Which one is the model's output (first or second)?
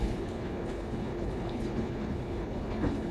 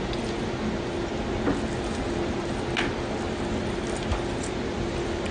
first